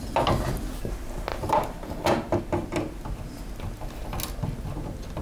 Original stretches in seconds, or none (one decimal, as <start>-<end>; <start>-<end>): 0.0-1.3; 2.4-5.2